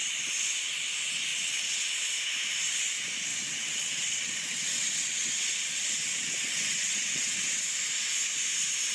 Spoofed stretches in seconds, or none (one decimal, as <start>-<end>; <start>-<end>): 1.3-1.9; 3.3-7.6